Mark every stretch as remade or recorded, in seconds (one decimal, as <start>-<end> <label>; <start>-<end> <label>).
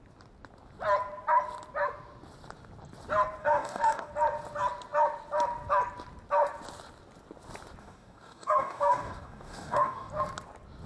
0.0-3.4 recorded; 3.4-4.1 remade; 4.1-7.8 recorded; 7.8-10.1 remade; 10.1-10.9 recorded